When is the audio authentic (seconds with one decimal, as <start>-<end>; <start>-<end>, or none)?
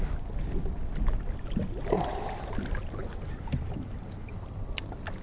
0.0-3.0